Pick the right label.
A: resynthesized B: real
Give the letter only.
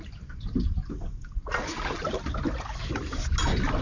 B